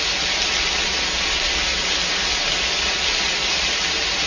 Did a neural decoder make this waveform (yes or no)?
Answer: no